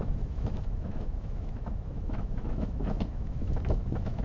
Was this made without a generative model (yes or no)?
no